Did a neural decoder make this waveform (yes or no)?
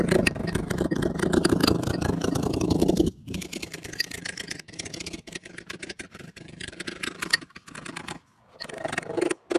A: yes